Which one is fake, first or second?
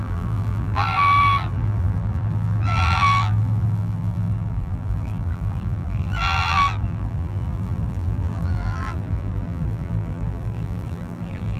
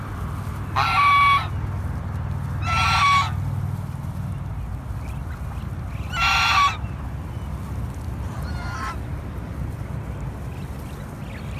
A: first